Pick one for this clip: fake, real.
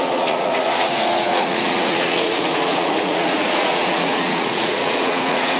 fake